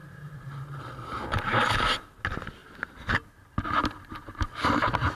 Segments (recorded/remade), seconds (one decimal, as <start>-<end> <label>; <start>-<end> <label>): 0.0-2.0 remade; 2.0-5.1 recorded